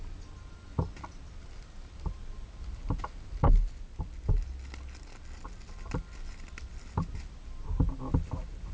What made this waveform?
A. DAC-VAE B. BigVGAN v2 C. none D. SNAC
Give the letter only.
C